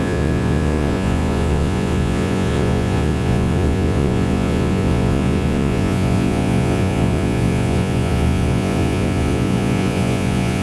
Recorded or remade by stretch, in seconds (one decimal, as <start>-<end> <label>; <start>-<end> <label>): 0.0-10.6 remade